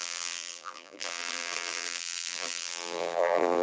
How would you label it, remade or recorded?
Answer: remade